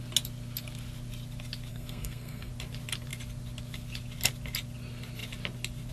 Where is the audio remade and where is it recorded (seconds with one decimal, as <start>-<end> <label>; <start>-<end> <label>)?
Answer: 0.0-1.7 recorded; 1.7-2.5 remade; 2.5-5.9 recorded